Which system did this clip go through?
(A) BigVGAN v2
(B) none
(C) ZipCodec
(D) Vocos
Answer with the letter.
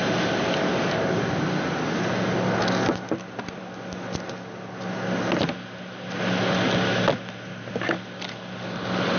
B